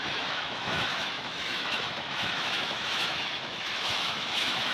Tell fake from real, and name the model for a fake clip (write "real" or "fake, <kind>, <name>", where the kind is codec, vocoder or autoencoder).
fake, autoencoder, DAC-VAE